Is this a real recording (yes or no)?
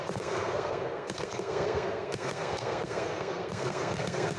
no